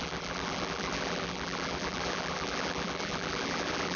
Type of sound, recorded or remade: remade